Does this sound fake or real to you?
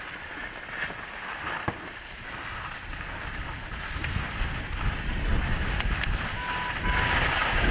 real